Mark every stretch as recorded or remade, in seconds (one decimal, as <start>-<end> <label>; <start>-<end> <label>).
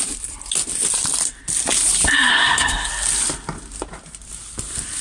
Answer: 0.0-2.3 recorded; 2.3-2.9 remade; 2.9-5.0 recorded